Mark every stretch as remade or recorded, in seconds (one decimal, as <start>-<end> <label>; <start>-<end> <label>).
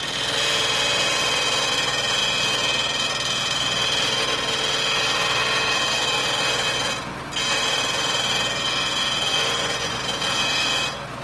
0.0-9.3 recorded; 9.3-10.0 remade; 10.0-11.2 recorded